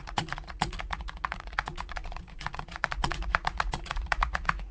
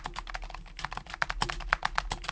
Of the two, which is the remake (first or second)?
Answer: first